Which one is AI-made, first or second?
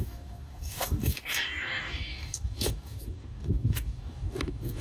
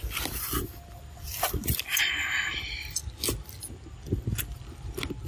first